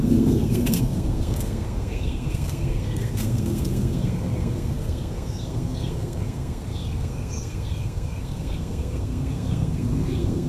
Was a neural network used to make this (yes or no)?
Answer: yes